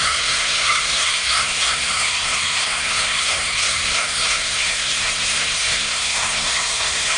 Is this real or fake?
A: fake